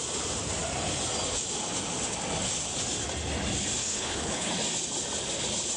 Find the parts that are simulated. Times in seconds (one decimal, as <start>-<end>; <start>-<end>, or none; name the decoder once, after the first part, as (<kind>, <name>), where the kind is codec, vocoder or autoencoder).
3.8-4.5 (codec, HILCodec)